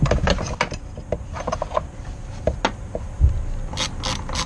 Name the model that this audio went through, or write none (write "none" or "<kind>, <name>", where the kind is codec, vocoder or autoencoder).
none